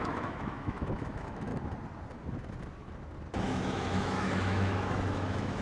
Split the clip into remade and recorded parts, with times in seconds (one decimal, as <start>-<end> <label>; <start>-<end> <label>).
0.0-1.5 remade; 1.5-3.4 recorded; 3.4-5.6 remade